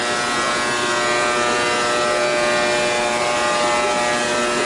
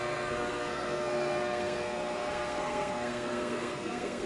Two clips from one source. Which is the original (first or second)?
first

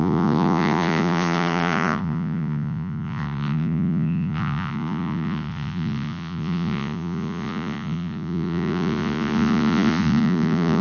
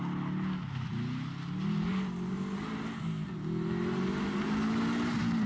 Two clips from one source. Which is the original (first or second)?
second